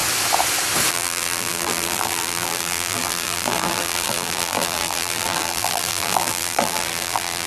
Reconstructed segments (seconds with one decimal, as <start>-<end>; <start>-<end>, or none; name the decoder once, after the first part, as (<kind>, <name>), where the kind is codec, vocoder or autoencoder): 0.9-7.5 (vocoder, BigVGAN v2)